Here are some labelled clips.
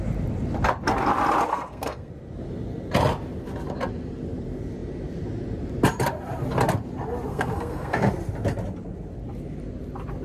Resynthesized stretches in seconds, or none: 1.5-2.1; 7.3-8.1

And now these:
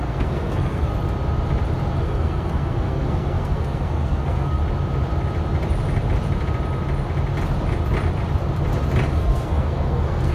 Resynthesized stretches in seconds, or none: 0.0-0.9; 2.0-4.6; 9.1-10.3

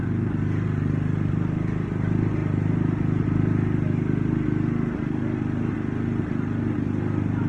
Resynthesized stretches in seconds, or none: none

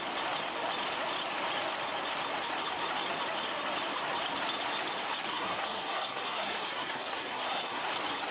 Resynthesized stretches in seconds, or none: 5.3-7.8

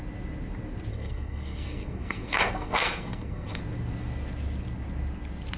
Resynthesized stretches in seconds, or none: 0.9-3.6

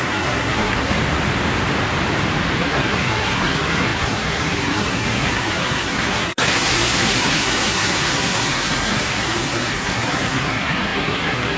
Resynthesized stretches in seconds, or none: 0.0-1.0; 2.6-11.6

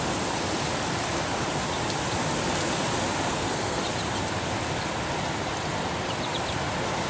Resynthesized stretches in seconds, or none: 3.3-3.8